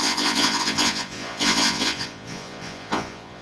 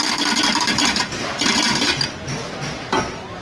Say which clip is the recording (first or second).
second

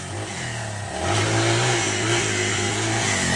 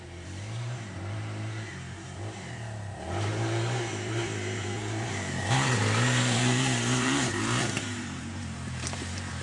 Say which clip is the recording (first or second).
first